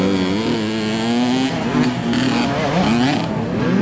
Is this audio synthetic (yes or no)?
no